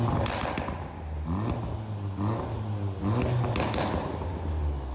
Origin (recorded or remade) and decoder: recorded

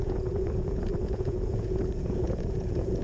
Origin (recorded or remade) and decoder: remade, vocoder, Vocos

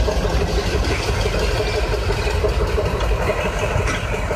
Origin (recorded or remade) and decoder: recorded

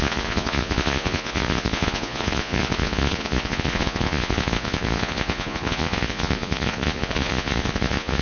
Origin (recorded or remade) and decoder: remade, vocoder, Vocos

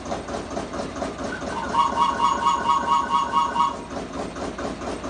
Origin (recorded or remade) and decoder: recorded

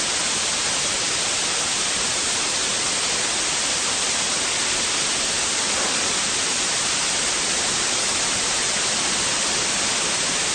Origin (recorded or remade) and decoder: recorded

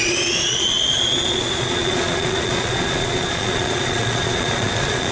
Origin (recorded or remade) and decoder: remade, vocoder, Vocos